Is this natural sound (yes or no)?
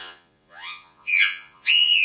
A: no